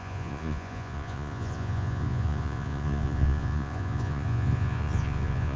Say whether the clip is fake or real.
fake